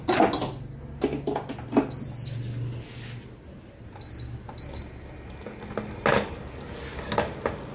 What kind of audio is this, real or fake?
real